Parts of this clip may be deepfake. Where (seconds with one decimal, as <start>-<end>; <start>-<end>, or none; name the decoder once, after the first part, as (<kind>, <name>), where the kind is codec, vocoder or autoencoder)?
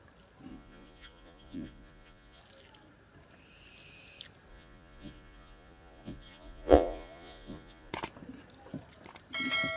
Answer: 0.5-2.4 (vocoder, Vocos); 4.5-7.9